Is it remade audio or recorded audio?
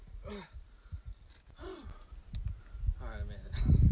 recorded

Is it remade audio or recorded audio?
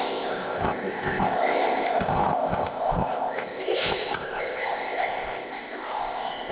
remade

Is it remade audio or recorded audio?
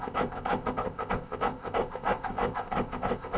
remade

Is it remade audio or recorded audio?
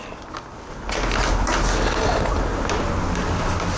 recorded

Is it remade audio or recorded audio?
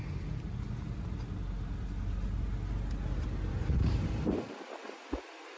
recorded